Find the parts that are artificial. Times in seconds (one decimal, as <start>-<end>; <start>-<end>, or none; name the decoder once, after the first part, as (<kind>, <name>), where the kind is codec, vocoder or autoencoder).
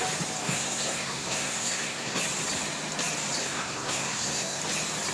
0.4-2.2 (codec, SNAC); 3.4-4.6